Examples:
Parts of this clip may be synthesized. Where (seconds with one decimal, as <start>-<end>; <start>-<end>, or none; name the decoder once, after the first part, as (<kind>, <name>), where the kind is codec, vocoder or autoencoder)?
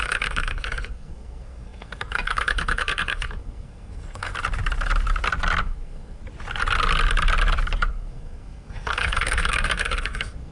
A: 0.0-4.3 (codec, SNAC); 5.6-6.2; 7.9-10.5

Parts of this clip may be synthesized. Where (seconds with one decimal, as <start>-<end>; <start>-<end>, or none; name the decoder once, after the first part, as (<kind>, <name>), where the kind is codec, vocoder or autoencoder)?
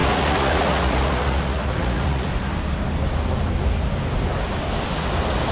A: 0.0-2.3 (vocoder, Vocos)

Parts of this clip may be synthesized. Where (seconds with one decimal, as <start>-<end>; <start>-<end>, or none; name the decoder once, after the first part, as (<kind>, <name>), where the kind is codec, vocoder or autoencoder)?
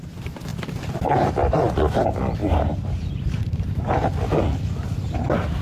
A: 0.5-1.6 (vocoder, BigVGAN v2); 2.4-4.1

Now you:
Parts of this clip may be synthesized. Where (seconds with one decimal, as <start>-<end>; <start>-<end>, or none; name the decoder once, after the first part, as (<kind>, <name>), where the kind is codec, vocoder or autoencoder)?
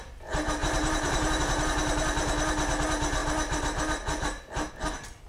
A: 0.6-1.4 (vocoder, BigVGAN v2)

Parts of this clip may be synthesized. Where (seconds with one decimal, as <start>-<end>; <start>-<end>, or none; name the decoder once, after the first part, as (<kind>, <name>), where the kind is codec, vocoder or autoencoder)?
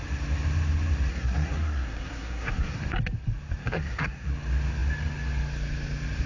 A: 1.1-2.8 (codec, SNAC); 3.6-4.3